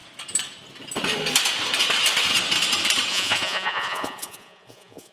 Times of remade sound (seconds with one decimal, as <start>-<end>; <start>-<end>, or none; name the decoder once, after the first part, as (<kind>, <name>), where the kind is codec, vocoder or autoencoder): 3.1-5.1 (vocoder, Vocos)